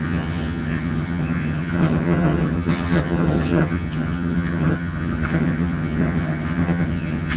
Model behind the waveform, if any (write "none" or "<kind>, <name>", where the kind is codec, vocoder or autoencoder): vocoder, HiFi-GAN